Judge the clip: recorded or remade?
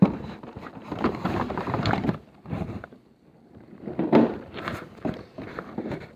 remade